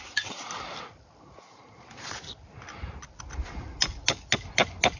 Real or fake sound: real